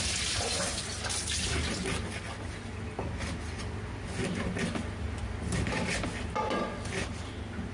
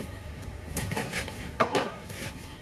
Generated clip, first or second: second